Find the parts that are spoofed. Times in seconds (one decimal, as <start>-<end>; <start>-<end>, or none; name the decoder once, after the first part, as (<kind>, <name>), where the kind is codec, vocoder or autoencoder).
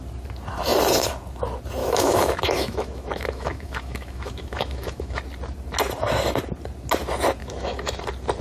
1.8-5.2 (autoencoder, DAC-VAE); 7.4-8.0